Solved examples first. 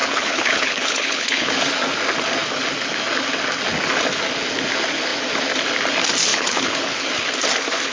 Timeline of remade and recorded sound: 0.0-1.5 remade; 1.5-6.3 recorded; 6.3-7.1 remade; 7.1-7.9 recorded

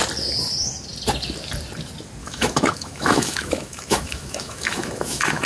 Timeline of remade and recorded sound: 0.0-2.2 recorded; 2.2-5.5 remade

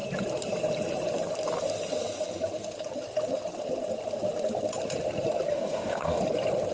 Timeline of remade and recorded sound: 0.0-5.5 recorded; 5.5-6.2 remade; 6.2-6.7 recorded

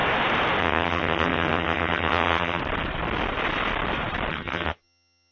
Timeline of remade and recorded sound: 0.0-0.6 recorded; 0.6-2.6 remade; 2.6-4.3 recorded; 4.3-5.3 remade